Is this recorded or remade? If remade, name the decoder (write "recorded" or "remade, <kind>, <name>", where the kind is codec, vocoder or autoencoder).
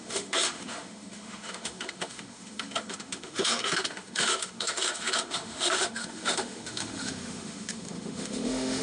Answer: remade, autoencoder, DAC-VAE